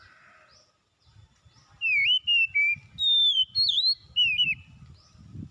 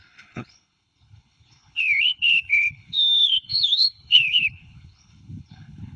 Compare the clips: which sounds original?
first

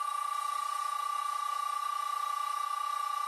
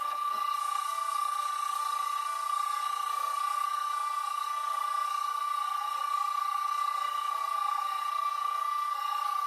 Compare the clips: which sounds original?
first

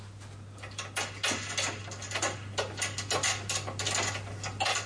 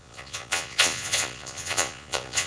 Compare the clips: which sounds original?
first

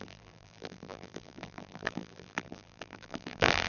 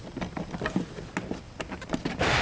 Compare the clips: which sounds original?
second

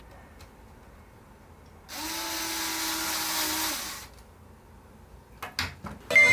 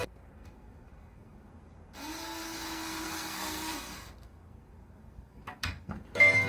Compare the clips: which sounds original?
first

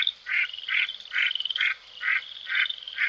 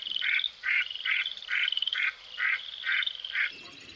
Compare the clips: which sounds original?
first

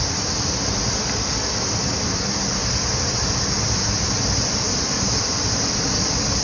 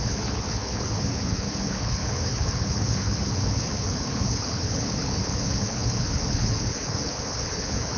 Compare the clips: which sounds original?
first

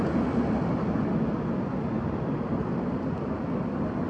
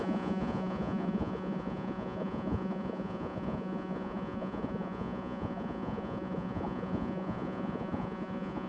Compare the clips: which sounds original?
first